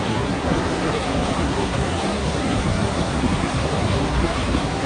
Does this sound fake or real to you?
fake